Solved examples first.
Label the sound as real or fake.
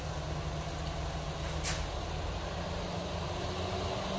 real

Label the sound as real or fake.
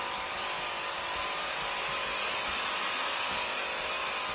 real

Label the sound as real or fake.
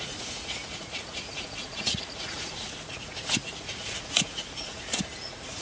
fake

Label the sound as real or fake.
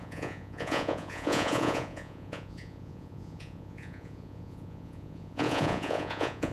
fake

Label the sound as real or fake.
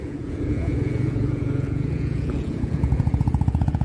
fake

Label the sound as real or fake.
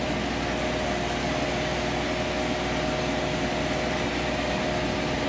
real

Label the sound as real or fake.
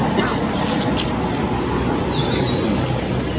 real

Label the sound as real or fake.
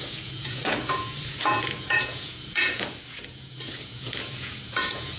fake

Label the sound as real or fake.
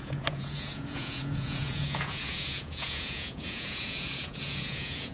fake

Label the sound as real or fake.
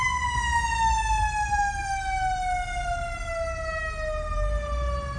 real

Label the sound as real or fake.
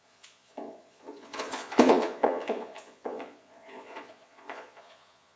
fake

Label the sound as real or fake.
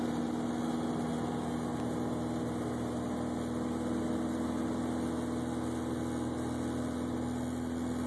real